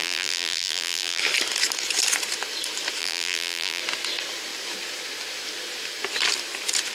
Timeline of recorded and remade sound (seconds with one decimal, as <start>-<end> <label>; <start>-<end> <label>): 0.0-1.2 remade; 1.2-3.0 recorded; 3.0-3.8 remade; 3.8-6.9 recorded